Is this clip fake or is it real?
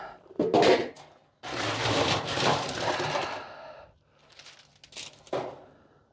real